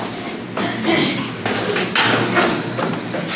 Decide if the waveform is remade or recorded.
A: recorded